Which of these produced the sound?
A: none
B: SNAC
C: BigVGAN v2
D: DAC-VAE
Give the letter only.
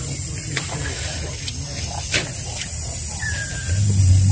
A